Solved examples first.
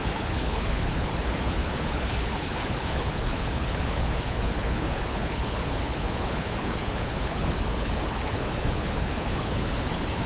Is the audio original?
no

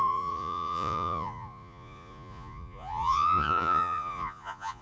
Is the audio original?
no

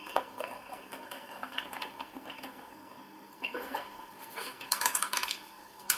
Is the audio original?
no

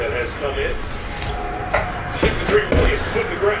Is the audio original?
yes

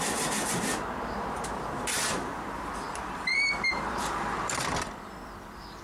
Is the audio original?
no